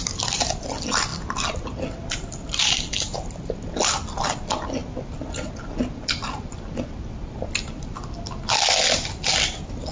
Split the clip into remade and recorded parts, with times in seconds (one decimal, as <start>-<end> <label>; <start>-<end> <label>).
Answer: 0.0-9.9 recorded